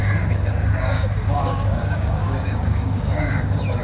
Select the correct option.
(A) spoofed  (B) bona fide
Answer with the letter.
A